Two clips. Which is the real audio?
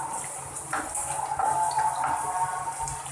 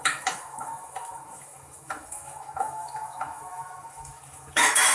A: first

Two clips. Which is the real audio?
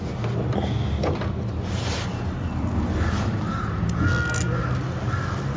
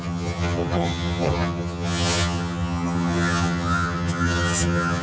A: first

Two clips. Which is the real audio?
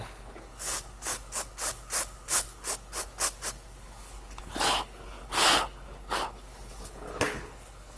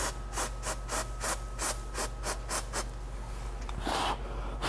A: second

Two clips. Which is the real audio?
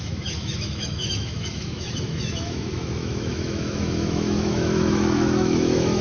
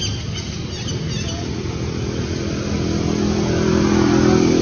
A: second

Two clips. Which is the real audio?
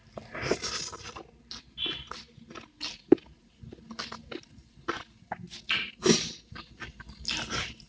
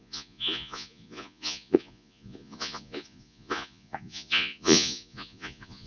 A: first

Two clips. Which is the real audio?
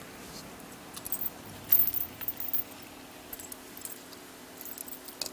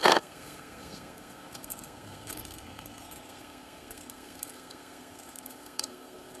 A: first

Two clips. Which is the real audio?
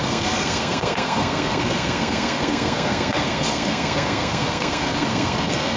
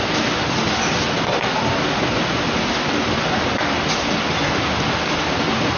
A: second